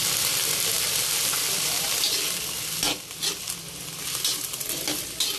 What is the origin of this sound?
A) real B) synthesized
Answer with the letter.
A